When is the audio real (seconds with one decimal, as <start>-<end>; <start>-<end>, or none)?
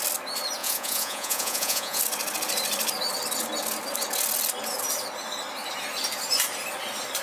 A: 0.0-0.6; 2.0-7.2